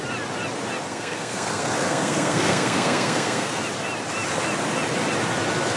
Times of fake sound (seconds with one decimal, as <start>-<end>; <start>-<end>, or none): 0.9-3.6

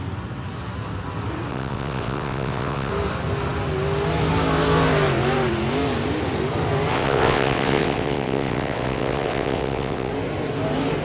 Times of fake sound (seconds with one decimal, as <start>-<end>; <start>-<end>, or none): 1.5-2.9; 6.9-10.1

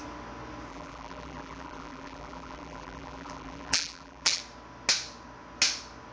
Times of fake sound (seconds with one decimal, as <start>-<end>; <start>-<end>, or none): 0.7-4.4

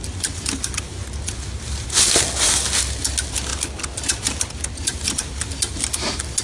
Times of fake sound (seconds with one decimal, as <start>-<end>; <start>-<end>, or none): none

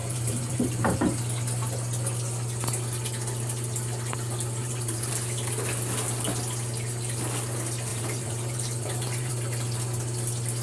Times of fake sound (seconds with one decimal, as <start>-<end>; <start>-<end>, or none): 0.0-1.2; 4.6-5.1; 7.9-9.3

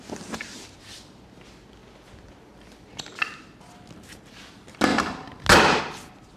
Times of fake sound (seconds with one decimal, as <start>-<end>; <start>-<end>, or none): none

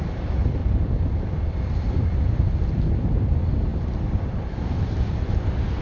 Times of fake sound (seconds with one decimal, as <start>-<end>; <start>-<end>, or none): 0.6-2.9; 3.7-5.8

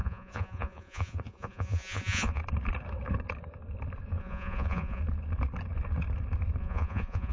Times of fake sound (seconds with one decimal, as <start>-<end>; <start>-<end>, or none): 0.0-2.4; 4.2-5.0; 6.6-7.3